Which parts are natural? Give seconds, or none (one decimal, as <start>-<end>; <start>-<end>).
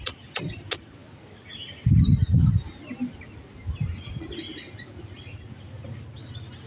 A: 0.0-6.7